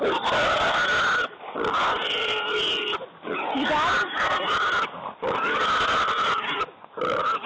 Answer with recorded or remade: recorded